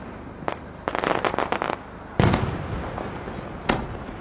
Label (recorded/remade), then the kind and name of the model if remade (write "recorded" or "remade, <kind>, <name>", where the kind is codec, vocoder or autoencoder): recorded